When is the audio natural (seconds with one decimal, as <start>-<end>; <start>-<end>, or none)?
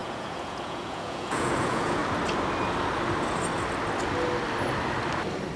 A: 2.0-5.6